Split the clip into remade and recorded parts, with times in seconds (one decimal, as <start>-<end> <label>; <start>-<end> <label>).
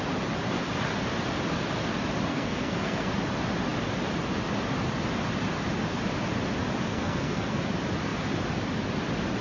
0.0-2.3 recorded; 2.3-3.1 remade; 3.1-6.9 recorded; 6.9-7.6 remade; 7.6-9.4 recorded